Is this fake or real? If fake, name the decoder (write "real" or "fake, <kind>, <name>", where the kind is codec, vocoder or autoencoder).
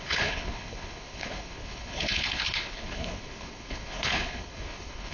fake, codec, HILCodec